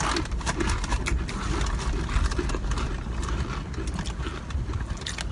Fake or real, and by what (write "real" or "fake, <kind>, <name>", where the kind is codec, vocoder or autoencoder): real